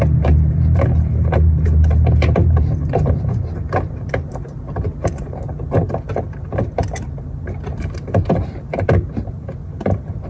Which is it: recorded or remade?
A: remade